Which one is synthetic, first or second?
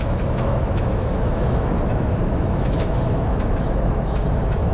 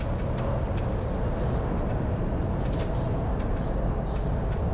first